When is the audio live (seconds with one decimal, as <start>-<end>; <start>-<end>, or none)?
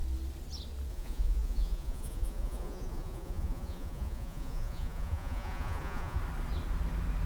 0.0-0.9; 6.2-7.3